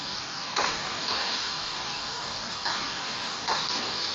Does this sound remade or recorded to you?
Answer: remade